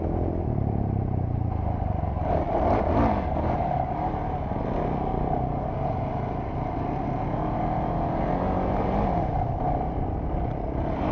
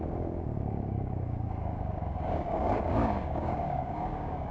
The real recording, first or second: first